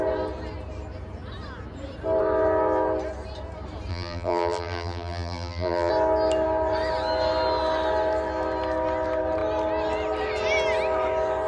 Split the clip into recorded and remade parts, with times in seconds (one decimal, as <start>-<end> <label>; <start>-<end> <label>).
0.0-3.9 recorded; 3.9-5.9 remade; 5.9-11.5 recorded